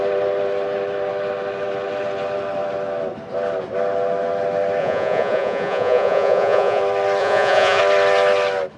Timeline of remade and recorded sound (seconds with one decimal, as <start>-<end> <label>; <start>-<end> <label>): 0.0-4.8 recorded; 4.8-6.8 remade; 6.8-7.2 recorded; 7.2-7.8 remade; 7.8-8.8 recorded